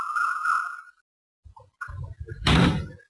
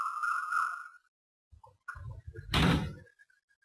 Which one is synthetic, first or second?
first